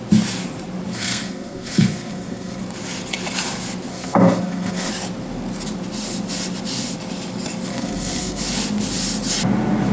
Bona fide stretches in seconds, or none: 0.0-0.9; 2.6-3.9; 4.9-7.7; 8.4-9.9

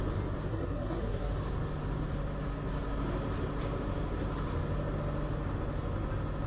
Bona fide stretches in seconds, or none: 0.0-0.5; 1.3-6.5

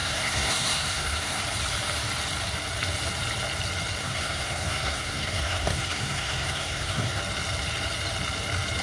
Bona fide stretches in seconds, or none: 1.4-4.0; 7.2-8.8

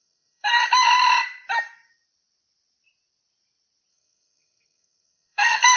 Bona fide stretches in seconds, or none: 0.6-3.9

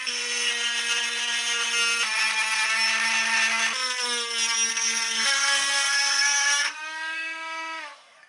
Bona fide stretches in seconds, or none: 0.5-4.7